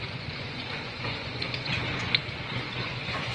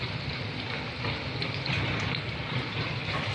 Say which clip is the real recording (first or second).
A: second